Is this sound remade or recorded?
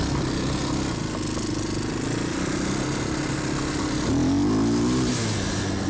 recorded